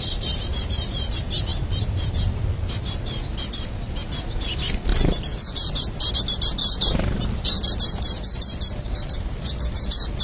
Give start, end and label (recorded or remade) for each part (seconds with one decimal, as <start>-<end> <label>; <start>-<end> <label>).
0.0-4.9 recorded; 4.9-6.1 remade; 6.1-6.6 recorded; 6.6-7.4 remade; 7.4-10.2 recorded